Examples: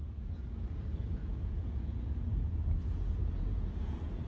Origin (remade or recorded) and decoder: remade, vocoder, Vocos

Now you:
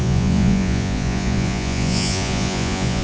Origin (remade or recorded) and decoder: remade, vocoder, Vocos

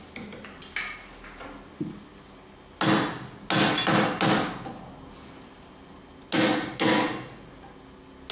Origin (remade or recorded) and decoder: recorded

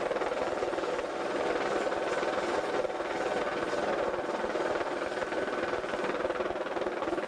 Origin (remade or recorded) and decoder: recorded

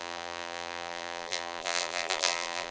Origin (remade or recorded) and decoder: remade, vocoder, BigVGAN v2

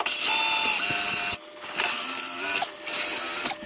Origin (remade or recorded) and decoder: recorded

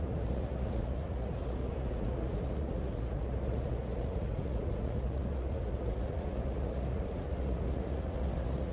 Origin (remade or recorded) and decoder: remade, vocoder, Vocos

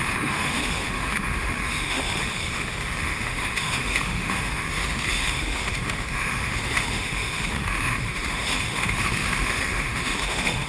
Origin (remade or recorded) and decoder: remade, autoencoder, DAC-VAE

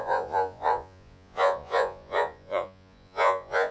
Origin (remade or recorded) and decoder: remade, vocoder, Vocos